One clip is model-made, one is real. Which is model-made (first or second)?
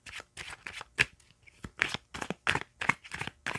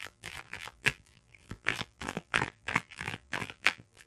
second